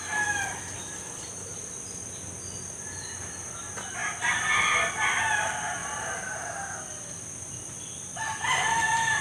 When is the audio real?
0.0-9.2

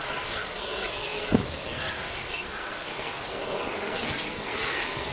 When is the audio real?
none

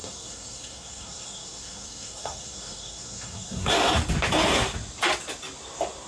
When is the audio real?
3.7-6.1

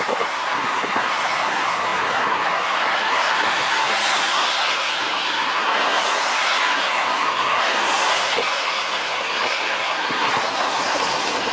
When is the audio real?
none

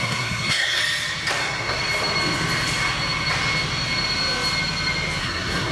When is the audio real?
0.8-1.4; 1.8-5.2

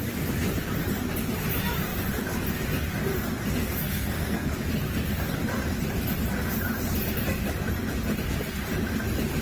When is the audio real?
0.0-3.6; 4.5-9.4

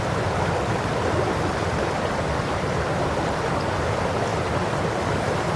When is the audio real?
0.0-5.6